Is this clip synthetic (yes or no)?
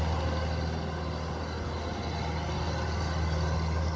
no